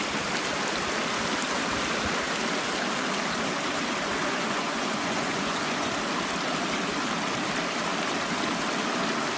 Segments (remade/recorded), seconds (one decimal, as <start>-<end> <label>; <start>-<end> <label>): 0.0-4.2 recorded; 4.2-5.9 remade; 5.9-9.4 recorded